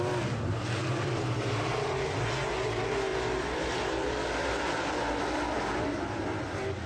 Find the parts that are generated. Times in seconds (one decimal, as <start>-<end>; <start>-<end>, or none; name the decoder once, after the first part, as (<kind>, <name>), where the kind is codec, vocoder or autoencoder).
0.8-1.5 (vocoder, BigVGAN v2); 3.1-6.5